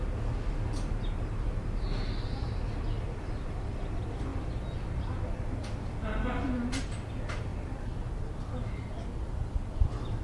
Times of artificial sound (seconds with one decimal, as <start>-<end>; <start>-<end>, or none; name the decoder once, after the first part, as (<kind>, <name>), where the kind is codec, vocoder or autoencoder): none